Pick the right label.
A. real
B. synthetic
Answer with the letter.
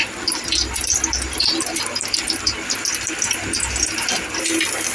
B